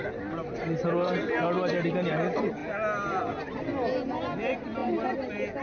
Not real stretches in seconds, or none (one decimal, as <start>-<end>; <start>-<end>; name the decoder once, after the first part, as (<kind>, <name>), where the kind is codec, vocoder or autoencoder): none